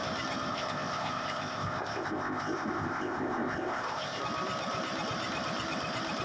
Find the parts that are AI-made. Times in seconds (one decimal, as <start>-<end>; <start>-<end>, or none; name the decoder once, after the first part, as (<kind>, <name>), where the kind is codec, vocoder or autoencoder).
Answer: 0.5-4.2 (codec, ZipCodec)